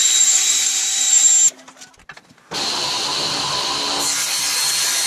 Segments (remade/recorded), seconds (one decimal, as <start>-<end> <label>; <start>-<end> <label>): 0.0-1.3 remade; 1.3-5.1 recorded